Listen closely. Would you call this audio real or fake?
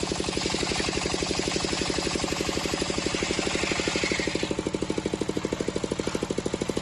real